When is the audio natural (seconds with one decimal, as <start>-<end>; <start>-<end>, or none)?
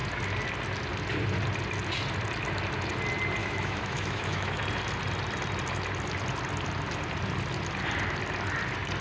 0.0-3.4; 4.6-9.0